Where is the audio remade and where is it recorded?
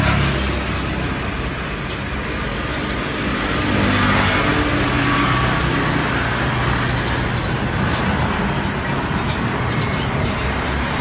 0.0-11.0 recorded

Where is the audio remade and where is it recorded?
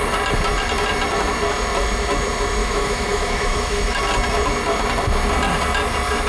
0.0-2.6 recorded; 2.6-4.0 remade; 4.0-6.3 recorded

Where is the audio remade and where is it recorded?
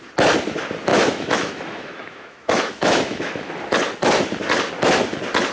0.0-0.9 recorded; 0.9-3.5 remade; 3.5-5.5 recorded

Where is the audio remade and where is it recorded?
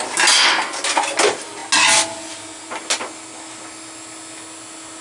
0.0-5.0 recorded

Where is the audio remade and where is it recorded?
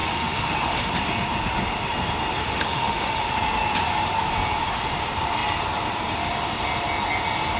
0.0-0.9 remade; 0.9-2.4 recorded; 2.4-3.2 remade; 3.2-7.6 recorded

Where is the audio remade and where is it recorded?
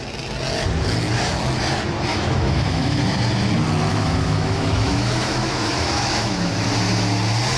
0.0-2.1 recorded; 2.1-3.0 remade; 3.0-3.9 recorded; 3.9-6.5 remade; 6.5-7.6 recorded